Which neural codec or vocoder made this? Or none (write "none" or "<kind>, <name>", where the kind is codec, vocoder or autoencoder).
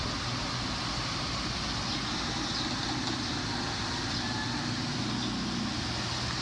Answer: none